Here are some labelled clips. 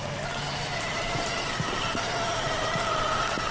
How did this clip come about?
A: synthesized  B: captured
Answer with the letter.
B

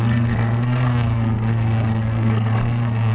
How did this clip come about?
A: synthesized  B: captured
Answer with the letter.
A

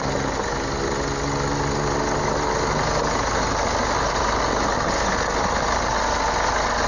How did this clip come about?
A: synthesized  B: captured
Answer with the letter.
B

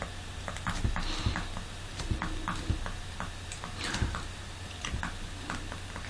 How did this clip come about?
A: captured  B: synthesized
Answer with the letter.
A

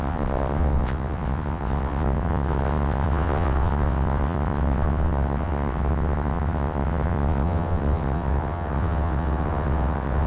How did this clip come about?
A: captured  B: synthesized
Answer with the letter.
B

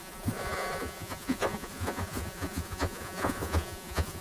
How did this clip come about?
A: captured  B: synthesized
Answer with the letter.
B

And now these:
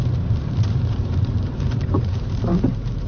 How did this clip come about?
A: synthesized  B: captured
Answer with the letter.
A